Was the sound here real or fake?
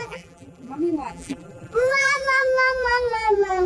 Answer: fake